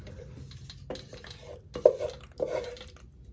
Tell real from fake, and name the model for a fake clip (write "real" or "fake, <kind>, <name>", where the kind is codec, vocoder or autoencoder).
real